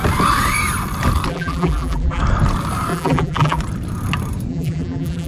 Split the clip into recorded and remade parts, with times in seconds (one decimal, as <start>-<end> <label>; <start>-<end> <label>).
0.0-1.3 recorded; 1.3-2.2 remade; 2.2-2.9 recorded; 2.9-3.6 remade; 3.6-4.5 recorded; 4.5-5.3 remade